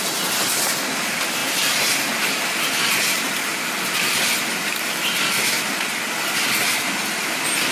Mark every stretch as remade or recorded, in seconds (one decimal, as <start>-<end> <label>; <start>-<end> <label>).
0.0-7.7 recorded